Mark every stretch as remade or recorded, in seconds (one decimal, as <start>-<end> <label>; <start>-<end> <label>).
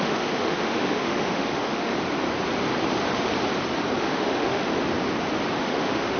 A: 0.0-1.9 remade; 1.9-4.0 recorded; 4.0-4.7 remade; 4.7-5.6 recorded; 5.6-6.2 remade